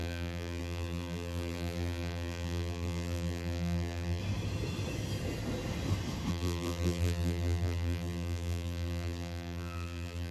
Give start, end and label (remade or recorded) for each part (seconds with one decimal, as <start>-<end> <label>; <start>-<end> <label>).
0.0-4.2 remade; 4.2-6.3 recorded; 6.3-10.3 remade